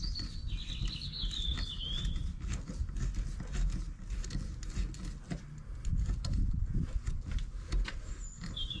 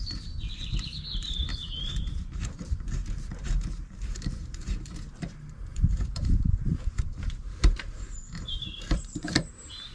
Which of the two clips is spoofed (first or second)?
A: second